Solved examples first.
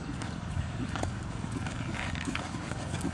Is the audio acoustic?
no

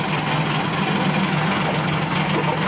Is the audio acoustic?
yes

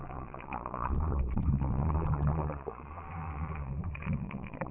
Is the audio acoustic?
no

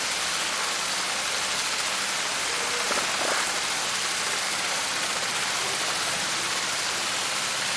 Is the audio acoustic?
yes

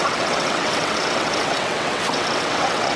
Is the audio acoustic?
no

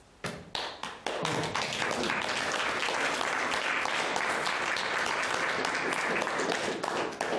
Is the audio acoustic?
yes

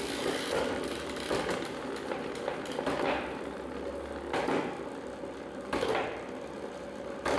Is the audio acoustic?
yes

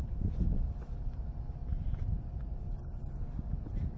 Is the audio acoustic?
yes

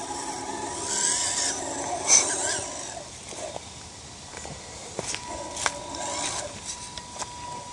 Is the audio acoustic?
yes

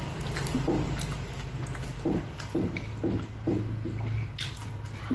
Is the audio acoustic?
yes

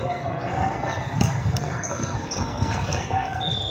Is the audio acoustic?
no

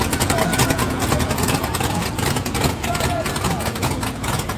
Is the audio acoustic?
no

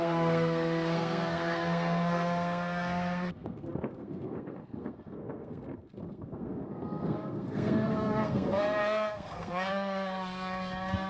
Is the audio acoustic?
no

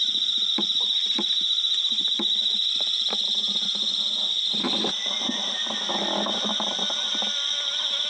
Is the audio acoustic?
yes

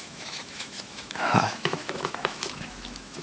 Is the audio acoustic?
no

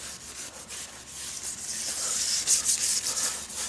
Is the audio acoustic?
yes